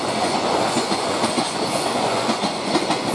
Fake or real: fake